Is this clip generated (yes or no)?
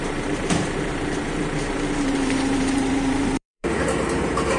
yes